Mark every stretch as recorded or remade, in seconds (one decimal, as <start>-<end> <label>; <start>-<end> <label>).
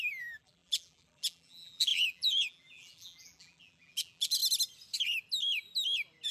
0.0-4.4 remade; 4.4-6.3 recorded